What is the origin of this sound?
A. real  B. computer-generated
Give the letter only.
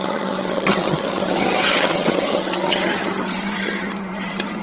B